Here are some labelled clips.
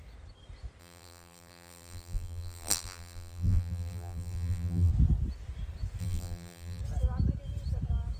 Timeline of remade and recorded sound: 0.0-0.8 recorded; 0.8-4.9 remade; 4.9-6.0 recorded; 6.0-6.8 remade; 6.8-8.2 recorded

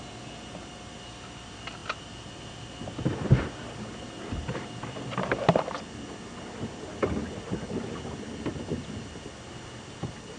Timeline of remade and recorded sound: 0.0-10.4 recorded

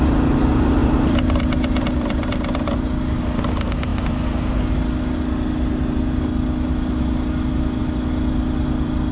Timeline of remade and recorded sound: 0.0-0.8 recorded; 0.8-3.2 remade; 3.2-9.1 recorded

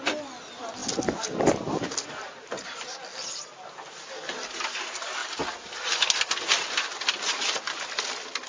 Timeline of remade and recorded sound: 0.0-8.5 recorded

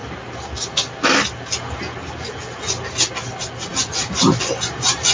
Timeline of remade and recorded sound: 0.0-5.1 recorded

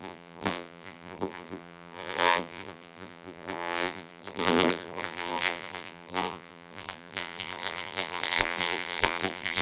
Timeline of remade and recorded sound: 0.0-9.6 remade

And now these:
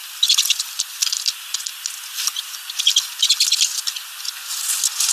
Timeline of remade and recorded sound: 0.0-5.1 recorded